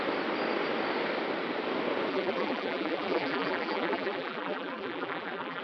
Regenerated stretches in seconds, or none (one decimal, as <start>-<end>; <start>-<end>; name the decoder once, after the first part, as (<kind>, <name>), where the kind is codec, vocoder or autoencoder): 2.1-5.6 (vocoder, BigVGAN v2)